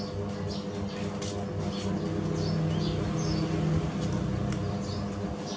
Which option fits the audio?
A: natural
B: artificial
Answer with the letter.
A